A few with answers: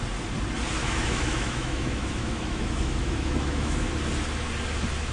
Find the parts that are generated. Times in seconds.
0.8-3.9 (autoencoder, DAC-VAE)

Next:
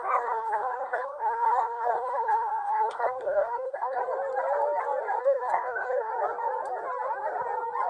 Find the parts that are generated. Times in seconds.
0.0-4.0 (codec, SNAC); 5.2-6.1